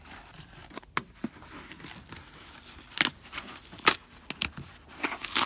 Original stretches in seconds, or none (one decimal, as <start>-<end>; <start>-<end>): 0.0-5.5